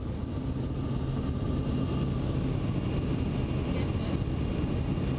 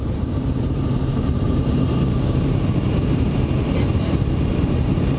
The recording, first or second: first